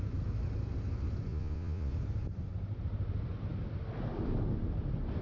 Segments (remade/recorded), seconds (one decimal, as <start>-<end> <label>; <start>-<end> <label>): 0.0-1.3 recorded; 1.3-1.9 remade; 1.9-5.2 recorded

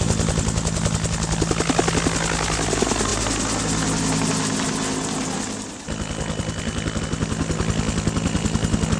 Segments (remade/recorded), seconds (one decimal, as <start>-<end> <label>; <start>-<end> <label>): 0.0-9.0 recorded

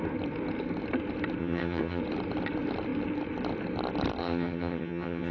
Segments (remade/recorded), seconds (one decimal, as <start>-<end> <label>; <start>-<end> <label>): 0.0-1.4 recorded; 1.4-2.0 remade; 2.0-4.2 recorded; 4.2-5.3 remade

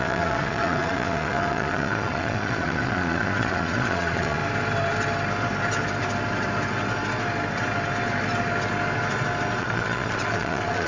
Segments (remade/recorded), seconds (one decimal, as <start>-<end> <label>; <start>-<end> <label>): 0.0-4.4 remade; 4.4-9.6 recorded; 9.6-10.9 remade

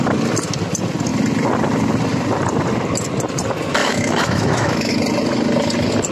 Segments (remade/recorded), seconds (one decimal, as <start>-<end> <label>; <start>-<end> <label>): 0.0-3.8 recorded; 3.8-4.9 remade; 4.9-6.1 recorded